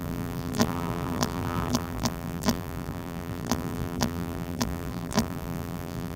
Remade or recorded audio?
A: remade